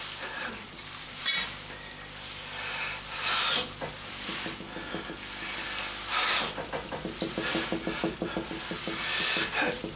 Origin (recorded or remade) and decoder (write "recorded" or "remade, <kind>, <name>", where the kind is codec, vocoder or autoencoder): recorded